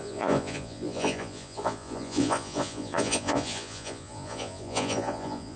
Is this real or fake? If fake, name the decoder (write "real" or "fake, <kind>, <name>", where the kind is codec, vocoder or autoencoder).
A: fake, vocoder, Vocos